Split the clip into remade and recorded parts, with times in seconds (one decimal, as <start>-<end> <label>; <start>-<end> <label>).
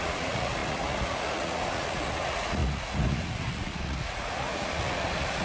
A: 0.0-5.4 remade